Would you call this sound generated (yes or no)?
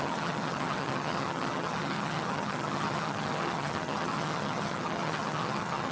yes